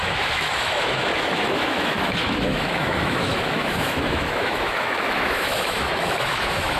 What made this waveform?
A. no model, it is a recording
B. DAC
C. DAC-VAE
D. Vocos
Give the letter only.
C